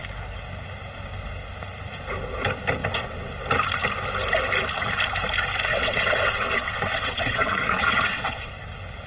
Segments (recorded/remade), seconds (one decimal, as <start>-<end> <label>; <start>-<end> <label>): 0.0-2.8 recorded; 2.8-3.3 remade; 3.3-5.7 recorded; 5.7-8.5 remade; 8.5-9.1 recorded